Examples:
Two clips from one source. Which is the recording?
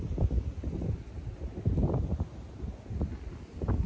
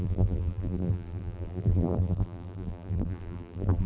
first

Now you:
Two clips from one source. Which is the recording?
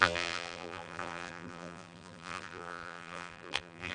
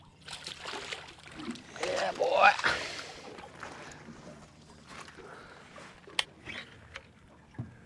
second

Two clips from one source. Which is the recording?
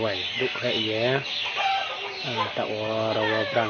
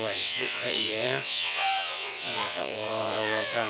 first